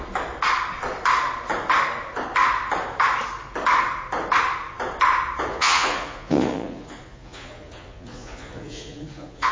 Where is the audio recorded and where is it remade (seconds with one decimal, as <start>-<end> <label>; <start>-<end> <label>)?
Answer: 0.0-5.5 recorded; 5.5-9.5 remade